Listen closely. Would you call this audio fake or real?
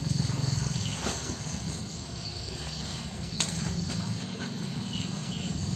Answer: fake